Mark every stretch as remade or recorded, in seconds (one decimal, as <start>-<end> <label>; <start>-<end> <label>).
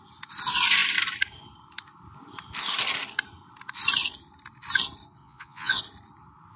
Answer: 0.0-5.2 recorded; 5.2-5.8 remade; 5.8-6.6 recorded